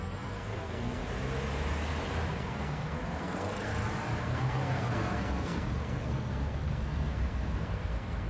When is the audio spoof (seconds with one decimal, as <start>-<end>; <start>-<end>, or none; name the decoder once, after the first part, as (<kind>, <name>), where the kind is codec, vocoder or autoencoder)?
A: 0.0-1.0 (codec, SNAC); 2.3-3.7; 4.2-8.3